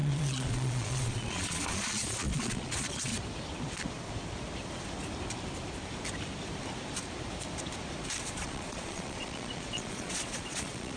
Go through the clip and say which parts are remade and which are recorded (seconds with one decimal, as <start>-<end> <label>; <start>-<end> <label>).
0.0-3.1 remade; 3.1-8.2 recorded; 8.2-11.0 remade